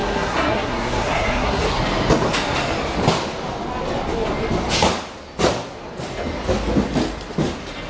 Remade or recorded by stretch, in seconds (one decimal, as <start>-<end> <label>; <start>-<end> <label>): 0.0-1.8 remade; 1.8-7.9 recorded